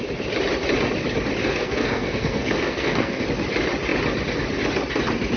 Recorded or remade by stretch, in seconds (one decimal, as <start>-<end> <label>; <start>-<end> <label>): 0.0-1.4 recorded; 1.4-3.2 remade; 3.2-5.4 recorded